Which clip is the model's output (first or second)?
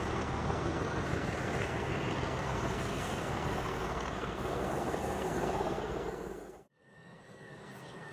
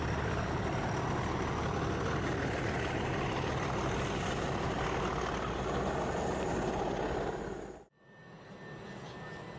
first